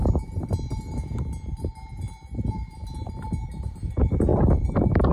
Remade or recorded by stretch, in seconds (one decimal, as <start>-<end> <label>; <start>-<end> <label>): 0.0-4.3 recorded; 4.3-5.1 remade